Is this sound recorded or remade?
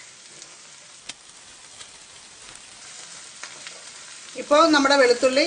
recorded